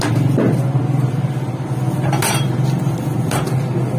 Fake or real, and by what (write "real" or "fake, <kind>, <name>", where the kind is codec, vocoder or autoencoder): real